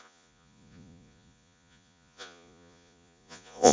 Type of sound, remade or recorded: remade